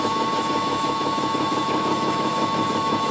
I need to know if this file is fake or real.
fake